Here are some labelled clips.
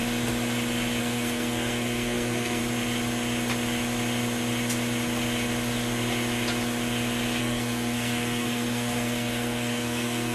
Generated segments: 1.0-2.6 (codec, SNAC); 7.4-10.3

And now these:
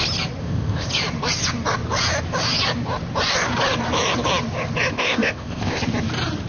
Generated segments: 0.4-0.9 (codec, ZipCodec); 4.9-5.8

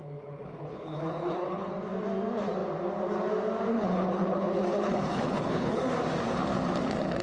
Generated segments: 0.0-1.7 (codec, HILCodec); 3.7-5.8

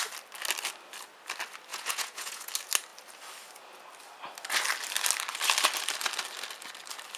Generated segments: 1.7-2.5 (vocoder, Vocos)

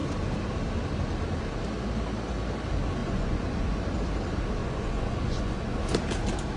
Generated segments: 3.0-3.8 (vocoder, Vocos); 4.6-5.8

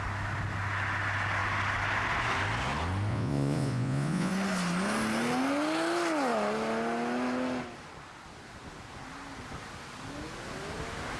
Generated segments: 3.1-4.3 (vocoder, Vocos)

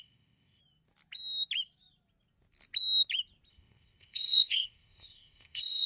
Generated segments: 0.0-0.6 (codec, ZipCodec); 3.5-5.9